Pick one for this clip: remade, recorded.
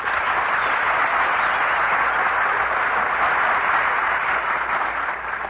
recorded